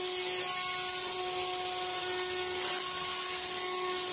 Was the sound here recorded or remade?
recorded